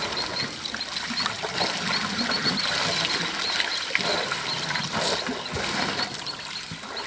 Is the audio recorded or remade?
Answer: recorded